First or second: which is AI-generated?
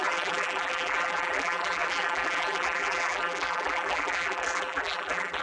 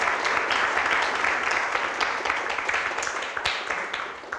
first